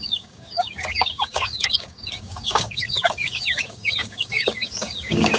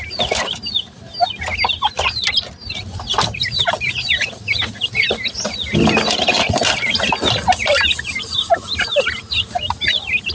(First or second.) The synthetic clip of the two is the first